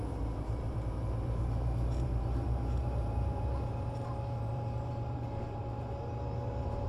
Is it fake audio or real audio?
fake